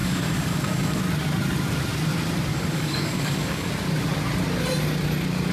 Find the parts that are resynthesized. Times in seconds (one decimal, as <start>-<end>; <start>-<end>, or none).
0.0-1.0; 2.5-3.7